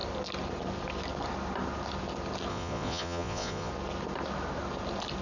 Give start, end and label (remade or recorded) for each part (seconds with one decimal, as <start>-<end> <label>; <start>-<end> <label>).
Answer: 0.0-2.5 recorded; 2.5-3.7 remade; 3.7-5.2 recorded